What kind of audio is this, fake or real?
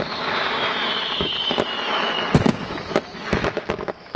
fake